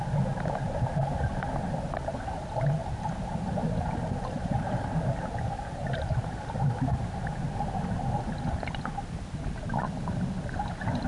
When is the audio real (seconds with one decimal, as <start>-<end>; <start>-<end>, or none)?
0.0-2.8; 7.2-11.1